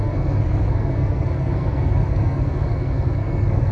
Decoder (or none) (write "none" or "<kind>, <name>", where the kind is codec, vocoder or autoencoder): codec, SNAC